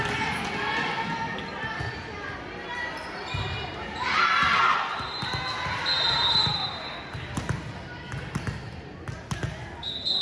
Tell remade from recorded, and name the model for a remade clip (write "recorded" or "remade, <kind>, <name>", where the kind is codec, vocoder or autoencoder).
recorded